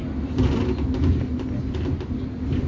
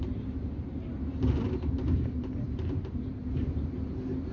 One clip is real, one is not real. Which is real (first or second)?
first